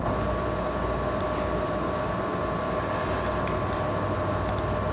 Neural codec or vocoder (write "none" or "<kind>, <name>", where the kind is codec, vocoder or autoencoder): none